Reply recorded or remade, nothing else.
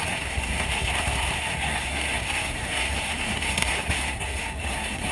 remade